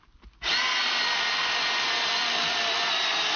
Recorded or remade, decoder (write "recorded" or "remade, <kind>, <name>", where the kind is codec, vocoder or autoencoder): recorded